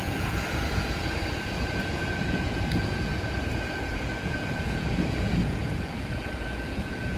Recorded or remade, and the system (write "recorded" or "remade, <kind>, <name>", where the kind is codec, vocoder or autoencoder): remade, vocoder, Vocos